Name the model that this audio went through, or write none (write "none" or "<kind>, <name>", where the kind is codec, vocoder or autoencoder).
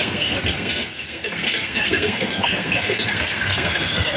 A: codec, SNAC